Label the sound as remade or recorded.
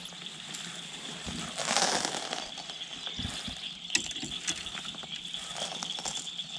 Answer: recorded